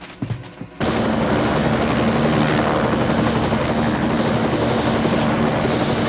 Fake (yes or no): no